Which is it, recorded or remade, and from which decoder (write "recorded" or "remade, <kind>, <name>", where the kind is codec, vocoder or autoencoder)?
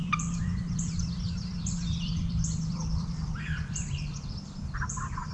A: remade, vocoder, BigVGAN v2